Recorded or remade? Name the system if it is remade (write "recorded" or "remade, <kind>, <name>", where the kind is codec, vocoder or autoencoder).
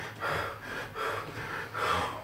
recorded